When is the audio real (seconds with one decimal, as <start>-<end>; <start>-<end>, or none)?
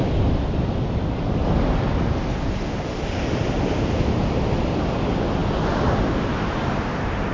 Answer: 0.0-7.3